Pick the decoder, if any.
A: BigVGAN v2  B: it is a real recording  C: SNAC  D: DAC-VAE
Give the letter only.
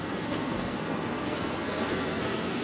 C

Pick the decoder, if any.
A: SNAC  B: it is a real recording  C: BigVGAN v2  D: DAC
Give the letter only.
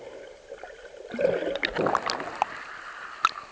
B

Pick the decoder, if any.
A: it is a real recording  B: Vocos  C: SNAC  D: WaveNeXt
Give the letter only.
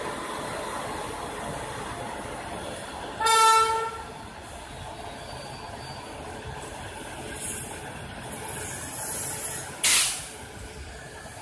A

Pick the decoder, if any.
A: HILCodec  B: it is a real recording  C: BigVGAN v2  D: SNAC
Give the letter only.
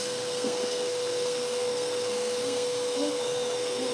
D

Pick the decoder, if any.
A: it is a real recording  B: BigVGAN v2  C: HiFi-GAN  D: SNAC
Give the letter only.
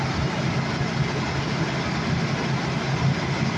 A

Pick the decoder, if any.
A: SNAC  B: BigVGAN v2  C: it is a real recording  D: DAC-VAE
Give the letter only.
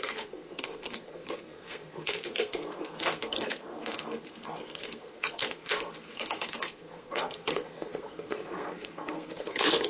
A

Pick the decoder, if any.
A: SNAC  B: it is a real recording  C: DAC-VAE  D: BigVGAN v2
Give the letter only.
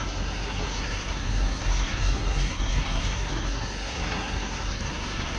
A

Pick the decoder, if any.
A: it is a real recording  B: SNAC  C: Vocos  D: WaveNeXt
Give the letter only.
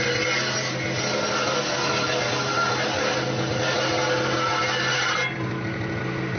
A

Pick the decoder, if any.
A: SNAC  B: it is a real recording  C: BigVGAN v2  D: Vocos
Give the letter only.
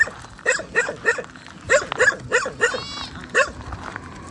B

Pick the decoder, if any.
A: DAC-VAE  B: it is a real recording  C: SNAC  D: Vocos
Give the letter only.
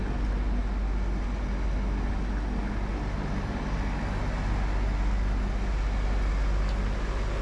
B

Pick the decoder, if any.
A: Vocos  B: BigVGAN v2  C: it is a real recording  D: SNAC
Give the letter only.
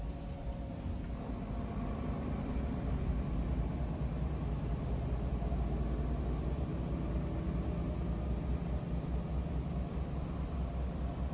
C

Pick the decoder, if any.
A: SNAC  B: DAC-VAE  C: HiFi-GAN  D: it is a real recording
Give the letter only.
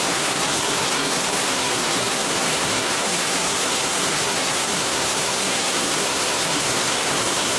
A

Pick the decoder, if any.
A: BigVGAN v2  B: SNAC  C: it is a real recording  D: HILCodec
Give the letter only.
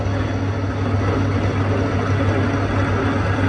C